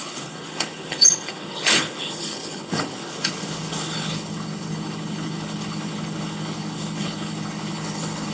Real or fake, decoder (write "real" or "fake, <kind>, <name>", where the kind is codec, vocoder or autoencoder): fake, codec, HILCodec